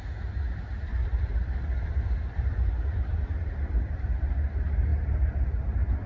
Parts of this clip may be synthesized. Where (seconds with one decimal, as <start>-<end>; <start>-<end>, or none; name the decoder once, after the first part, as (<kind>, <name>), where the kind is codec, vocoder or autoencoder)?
0.9-4.1 (vocoder, BigVGAN v2)